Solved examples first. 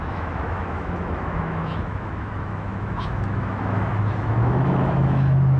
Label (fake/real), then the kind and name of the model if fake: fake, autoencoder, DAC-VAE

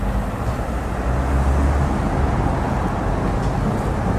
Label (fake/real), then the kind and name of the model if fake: real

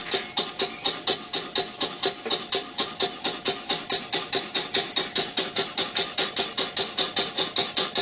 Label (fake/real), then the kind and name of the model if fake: real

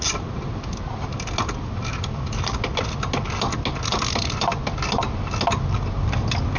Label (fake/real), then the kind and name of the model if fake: real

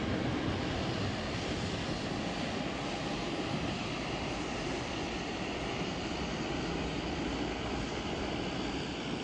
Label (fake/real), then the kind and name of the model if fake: real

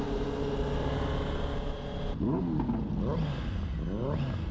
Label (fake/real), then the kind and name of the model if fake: real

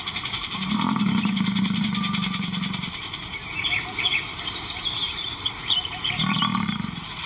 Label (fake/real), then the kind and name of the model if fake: fake, vocoder, BigVGAN v2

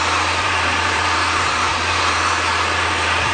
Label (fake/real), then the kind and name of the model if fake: fake, vocoder, BigVGAN v2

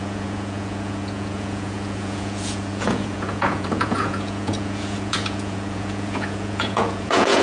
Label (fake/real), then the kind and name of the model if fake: fake, vocoder, Vocos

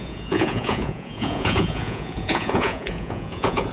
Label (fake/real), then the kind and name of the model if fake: fake, vocoder, Vocos